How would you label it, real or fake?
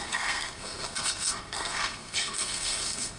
fake